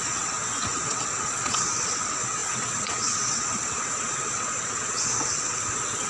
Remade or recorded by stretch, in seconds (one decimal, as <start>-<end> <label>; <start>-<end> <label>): 0.0-6.1 remade